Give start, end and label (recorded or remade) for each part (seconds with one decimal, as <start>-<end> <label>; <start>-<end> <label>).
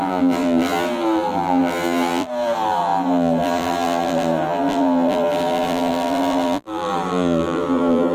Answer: 0.0-8.1 remade